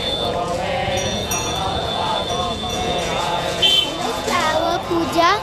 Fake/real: fake